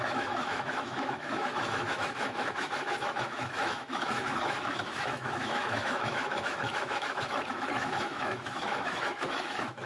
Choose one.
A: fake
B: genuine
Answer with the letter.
A